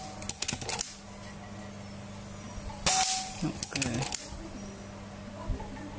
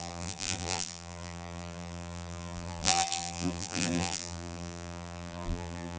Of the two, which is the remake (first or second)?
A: second